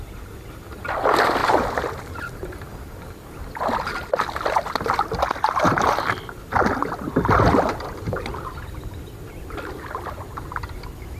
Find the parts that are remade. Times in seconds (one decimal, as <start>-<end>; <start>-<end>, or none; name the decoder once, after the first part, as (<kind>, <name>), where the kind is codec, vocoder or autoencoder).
none